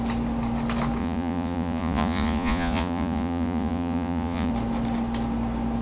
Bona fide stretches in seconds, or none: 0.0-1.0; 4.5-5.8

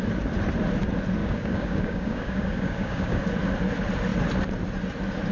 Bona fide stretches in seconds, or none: 0.0-1.2; 3.2-5.3

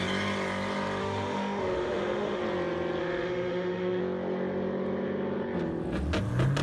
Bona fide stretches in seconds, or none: 0.0-1.0; 2.4-3.0; 4.0-6.6

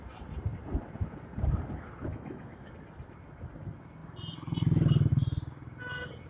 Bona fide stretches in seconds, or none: 0.0-2.1; 2.7-6.3

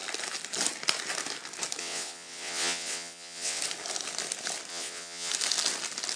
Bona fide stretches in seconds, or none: 0.0-1.8; 3.6-4.7; 5.3-6.2

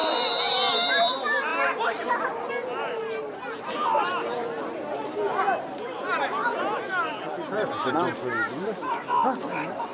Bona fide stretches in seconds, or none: 0.0-9.9

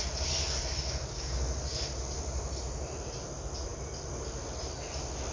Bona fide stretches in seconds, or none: 0.0-5.3